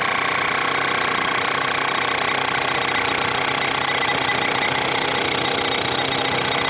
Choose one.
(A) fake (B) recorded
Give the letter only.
B